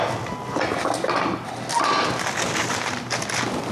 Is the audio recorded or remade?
recorded